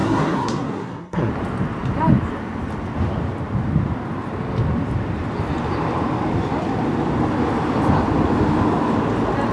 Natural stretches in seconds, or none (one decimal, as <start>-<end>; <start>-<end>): 1.3-9.5